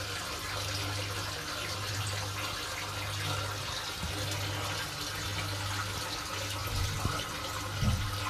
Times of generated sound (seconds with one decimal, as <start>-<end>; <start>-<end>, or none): none